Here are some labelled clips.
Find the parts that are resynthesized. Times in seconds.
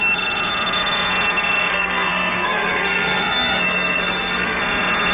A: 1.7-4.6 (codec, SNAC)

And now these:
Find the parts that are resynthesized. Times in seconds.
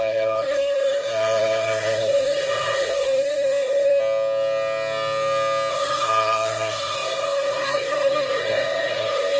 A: 0.0-4.0 (codec, SNAC); 5.7-9.4